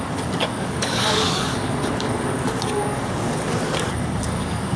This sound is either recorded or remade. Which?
remade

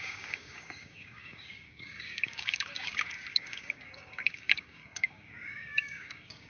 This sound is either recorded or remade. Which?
remade